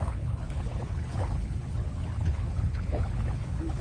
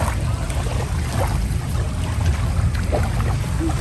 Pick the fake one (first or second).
first